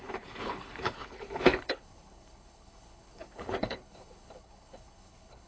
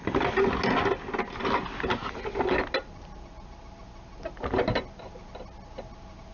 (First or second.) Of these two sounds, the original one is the second